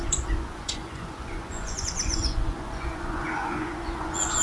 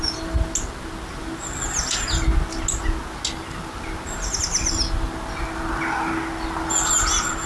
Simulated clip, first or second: first